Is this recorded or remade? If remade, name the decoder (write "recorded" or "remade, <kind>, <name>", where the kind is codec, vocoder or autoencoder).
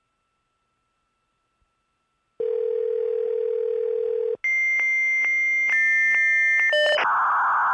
recorded